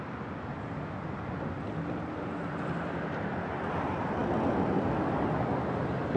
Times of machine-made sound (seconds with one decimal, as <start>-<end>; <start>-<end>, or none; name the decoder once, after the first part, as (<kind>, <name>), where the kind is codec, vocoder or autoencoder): none